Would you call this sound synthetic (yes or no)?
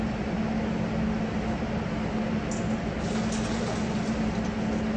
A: no